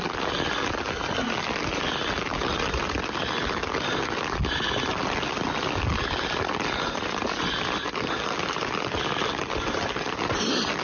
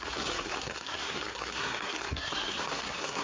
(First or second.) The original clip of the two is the first